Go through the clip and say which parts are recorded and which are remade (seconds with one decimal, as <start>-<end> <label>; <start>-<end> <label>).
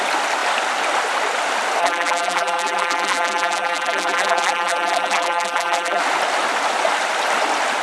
0.0-1.8 recorded; 1.8-6.0 remade; 6.0-7.8 recorded